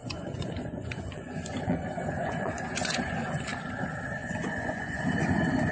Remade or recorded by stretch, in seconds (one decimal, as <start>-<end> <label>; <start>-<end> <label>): 0.0-3.4 remade; 3.4-4.2 recorded; 4.2-5.0 remade; 5.0-5.7 recorded